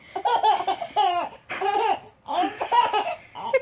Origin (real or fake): real